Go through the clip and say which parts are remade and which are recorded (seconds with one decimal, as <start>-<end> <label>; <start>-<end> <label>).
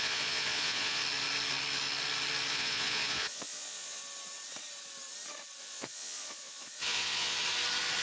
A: 0.0-1.0 remade; 1.0-2.5 recorded; 2.5-4.0 remade; 4.0-5.6 recorded; 5.6-7.4 remade; 7.4-8.0 recorded